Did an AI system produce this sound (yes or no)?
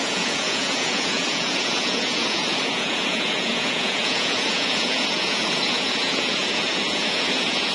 yes